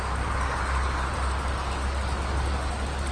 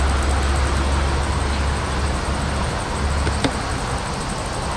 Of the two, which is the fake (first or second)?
first